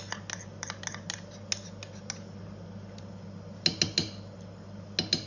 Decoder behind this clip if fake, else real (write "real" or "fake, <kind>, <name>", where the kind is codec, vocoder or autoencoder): real